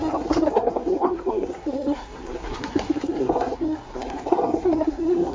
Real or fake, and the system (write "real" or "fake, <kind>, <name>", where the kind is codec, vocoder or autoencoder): fake, codec, SNAC